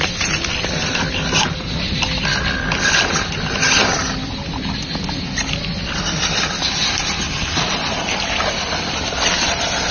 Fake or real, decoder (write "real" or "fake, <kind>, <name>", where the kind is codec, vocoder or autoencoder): real